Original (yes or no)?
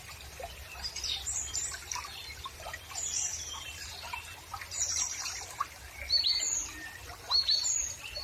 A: no